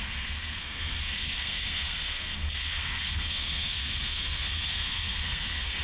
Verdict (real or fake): fake